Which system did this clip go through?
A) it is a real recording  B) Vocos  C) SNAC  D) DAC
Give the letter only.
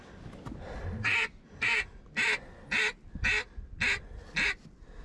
A